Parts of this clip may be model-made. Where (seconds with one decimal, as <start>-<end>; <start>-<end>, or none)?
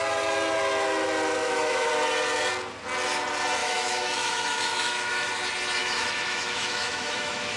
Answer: 1.4-1.9; 3.6-5.3; 5.8-7.6